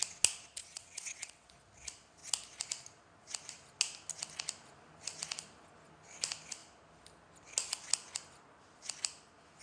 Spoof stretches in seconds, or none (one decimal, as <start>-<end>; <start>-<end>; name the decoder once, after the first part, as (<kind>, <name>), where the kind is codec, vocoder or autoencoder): 0.6-1.5 (vocoder, WaveNeXt)